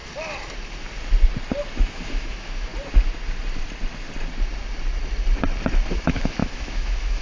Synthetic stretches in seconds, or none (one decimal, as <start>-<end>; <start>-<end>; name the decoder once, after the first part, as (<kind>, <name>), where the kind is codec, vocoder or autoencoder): 1.9-2.7 (autoencoder, DAC-VAE); 5.9-7.2